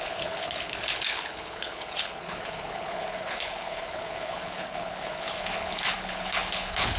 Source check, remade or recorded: remade